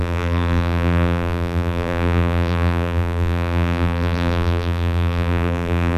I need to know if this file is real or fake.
fake